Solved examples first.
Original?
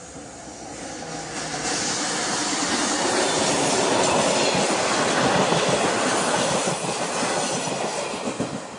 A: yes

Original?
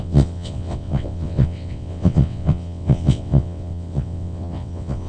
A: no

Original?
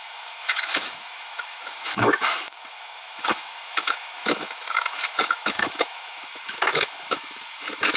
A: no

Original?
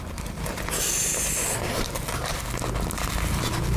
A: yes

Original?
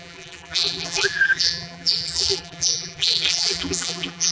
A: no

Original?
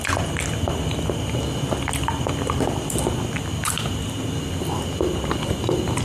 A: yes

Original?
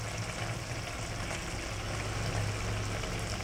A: yes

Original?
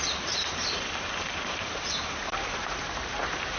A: no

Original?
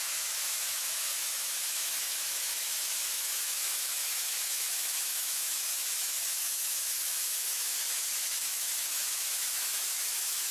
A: no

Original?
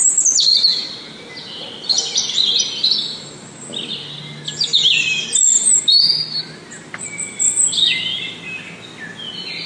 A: yes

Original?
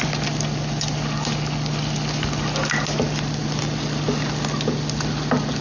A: yes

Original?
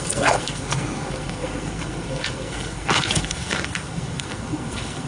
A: no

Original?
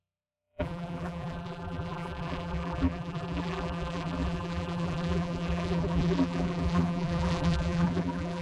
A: no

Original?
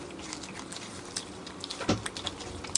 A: yes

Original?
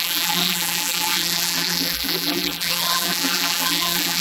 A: no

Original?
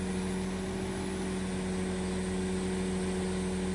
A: yes